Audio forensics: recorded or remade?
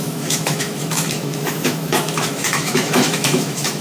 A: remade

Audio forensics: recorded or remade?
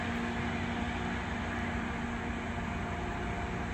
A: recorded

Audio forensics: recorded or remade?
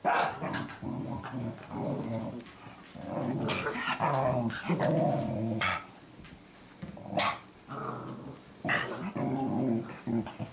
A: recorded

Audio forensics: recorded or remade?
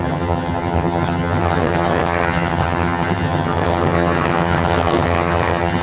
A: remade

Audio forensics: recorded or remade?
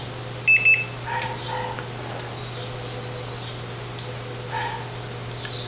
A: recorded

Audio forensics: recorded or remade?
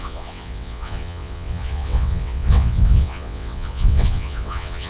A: remade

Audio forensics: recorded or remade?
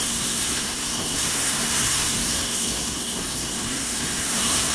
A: remade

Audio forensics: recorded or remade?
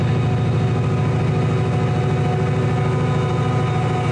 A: recorded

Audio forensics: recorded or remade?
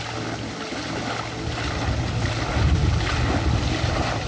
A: recorded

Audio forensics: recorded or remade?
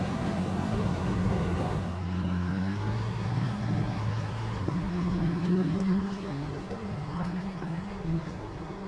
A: remade